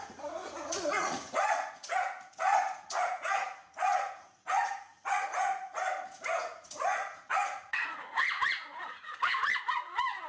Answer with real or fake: fake